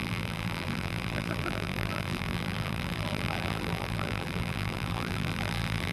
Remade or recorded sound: remade